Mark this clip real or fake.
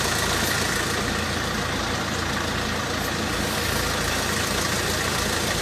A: real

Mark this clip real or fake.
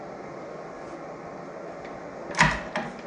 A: real